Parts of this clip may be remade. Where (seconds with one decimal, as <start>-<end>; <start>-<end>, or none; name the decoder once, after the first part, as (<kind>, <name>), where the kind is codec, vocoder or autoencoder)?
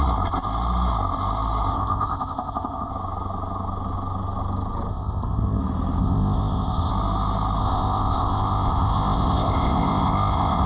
1.7-2.9 (codec, ZipCodec); 4.9-5.6; 6.0-6.9; 7.6-10.7